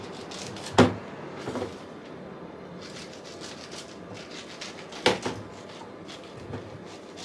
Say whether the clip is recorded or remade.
recorded